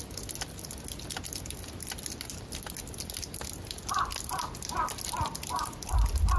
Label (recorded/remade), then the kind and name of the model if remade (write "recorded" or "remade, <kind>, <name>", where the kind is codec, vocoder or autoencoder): recorded